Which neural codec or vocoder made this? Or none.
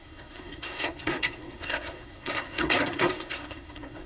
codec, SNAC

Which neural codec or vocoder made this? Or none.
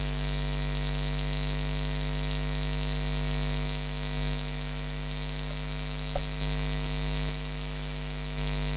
autoencoder, DAC-VAE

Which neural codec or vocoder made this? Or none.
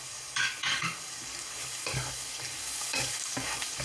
codec, DAC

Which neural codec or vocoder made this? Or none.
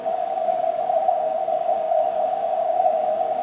codec, DAC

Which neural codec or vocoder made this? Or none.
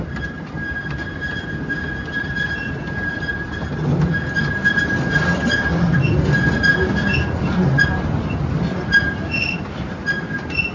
none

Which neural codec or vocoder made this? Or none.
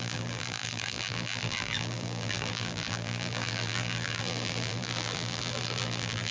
vocoder, BigVGAN v2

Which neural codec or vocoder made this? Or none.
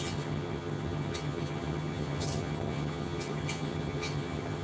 vocoder, HiFi-GAN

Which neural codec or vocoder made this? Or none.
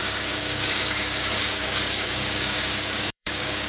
codec, DAC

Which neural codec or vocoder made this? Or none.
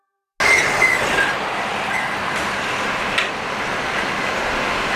none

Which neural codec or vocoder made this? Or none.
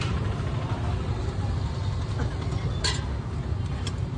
none